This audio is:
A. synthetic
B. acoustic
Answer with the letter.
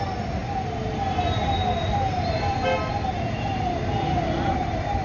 B